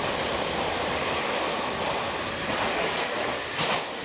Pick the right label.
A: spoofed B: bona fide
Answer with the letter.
B